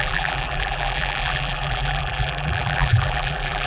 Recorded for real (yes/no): no